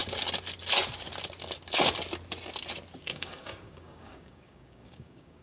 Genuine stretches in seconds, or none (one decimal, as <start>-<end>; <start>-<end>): 0.0-3.0